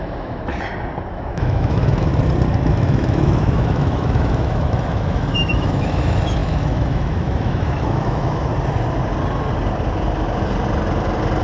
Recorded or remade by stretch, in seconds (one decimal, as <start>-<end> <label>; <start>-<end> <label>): 0.0-0.5 remade; 0.5-1.1 recorded; 1.1-2.1 remade; 2.1-2.7 recorded; 2.7-8.5 remade; 8.5-11.4 recorded